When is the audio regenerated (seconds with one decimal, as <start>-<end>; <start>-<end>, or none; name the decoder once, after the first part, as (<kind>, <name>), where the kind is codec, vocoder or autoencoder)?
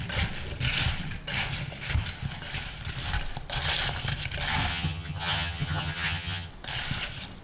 4.7-6.5 (vocoder, HiFi-GAN)